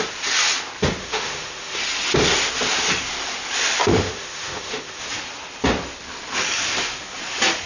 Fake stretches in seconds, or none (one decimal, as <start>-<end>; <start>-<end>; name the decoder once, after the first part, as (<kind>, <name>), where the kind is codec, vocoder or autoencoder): 1.0-1.8 (autoencoder, DAC-VAE); 3.9-5.0